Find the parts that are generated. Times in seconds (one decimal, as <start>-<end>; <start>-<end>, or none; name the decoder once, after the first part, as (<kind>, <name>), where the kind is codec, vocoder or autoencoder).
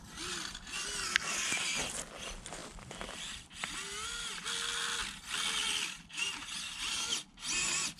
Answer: 2.6-3.2 (vocoder, BigVGAN v2)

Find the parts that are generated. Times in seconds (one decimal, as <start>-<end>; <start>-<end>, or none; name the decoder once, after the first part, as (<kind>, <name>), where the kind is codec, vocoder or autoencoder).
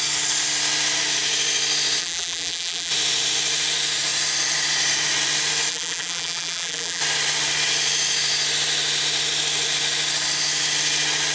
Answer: 2.0-2.9 (vocoder, BigVGAN v2); 5.7-7.0